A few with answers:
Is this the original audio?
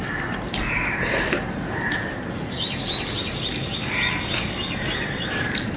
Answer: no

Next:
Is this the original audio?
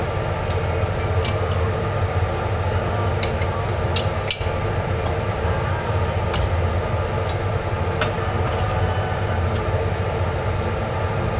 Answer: yes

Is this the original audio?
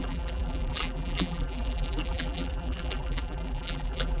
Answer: no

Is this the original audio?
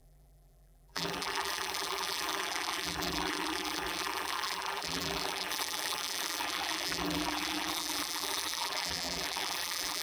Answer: no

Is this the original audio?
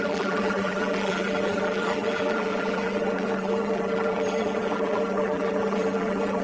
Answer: no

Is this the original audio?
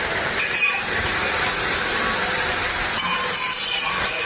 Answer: no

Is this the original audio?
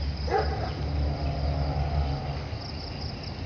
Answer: no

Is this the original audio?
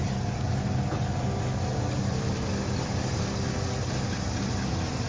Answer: yes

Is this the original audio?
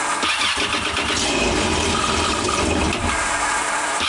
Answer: no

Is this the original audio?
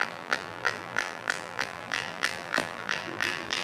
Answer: no